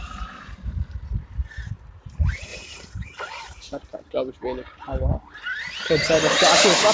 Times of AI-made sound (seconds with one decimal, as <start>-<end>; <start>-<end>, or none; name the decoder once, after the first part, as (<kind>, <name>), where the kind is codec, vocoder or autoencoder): none